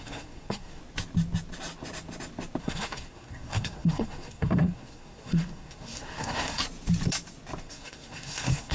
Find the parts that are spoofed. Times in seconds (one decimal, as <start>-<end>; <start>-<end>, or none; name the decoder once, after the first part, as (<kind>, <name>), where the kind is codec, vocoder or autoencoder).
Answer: 0.0-0.8 (codec, SNAC); 2.6-6.6; 7.6-8.7